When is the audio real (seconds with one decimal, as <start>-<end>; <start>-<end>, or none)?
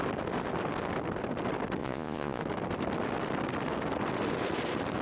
0.0-1.8; 2.4-5.0